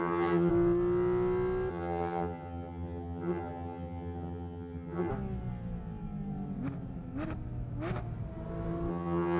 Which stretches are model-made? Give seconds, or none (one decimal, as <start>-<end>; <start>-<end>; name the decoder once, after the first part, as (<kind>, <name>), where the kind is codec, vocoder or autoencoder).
0.0-0.5 (vocoder, HiFi-GAN); 1.7-5.1; 8.9-9.4